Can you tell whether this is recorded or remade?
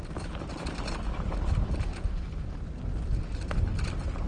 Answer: recorded